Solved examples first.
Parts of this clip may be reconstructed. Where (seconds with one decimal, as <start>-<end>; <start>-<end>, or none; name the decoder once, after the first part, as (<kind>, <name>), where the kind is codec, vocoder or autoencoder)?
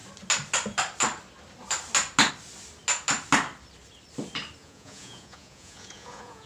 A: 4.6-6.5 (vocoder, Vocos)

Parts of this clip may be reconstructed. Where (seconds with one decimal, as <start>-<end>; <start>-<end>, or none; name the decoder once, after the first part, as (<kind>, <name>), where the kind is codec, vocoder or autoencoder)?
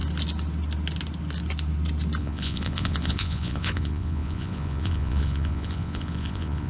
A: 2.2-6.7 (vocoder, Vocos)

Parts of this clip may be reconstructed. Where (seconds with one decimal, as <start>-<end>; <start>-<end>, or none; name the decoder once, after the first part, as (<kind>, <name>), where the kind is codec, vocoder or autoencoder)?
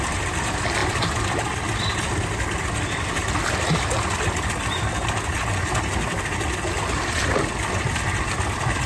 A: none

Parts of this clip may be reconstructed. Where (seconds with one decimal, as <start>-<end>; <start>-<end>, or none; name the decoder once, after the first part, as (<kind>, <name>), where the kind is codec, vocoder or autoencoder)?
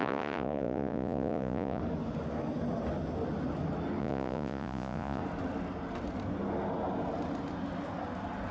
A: 0.0-1.8 (vocoder, Vocos); 4.0-5.2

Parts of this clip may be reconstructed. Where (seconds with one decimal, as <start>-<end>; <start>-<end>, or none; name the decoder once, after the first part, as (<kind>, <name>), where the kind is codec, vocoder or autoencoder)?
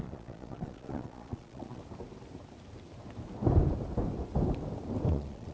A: 0.0-1.8 (vocoder, Vocos); 5.1-5.5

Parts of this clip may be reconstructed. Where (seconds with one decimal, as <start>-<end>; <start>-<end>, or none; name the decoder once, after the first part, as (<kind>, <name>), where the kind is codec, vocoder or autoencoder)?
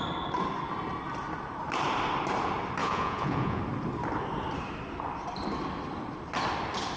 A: 2.8-3.6 (vocoder, Vocos)